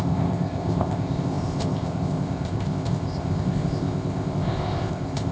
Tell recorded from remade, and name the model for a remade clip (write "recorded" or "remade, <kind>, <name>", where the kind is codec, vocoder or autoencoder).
remade, codec, ZipCodec